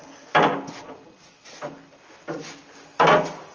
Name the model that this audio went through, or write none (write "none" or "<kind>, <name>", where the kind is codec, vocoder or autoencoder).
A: none